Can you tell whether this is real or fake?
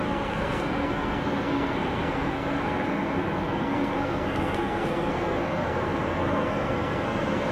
fake